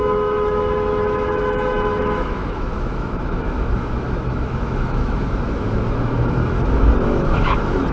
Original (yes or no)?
no